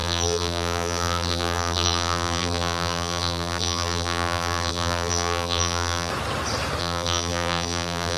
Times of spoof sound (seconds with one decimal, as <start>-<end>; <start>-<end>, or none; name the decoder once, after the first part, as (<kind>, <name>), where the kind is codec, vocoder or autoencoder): 0.0-6.1 (vocoder, BigVGAN v2); 6.8-8.2